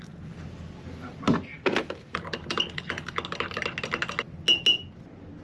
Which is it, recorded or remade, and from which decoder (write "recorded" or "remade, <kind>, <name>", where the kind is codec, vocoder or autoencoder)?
recorded